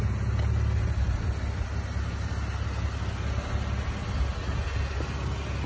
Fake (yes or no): no